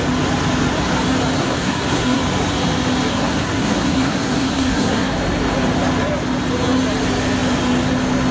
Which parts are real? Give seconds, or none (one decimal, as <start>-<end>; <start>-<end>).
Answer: 0.0-1.4; 2.2-3.1; 5.1-8.3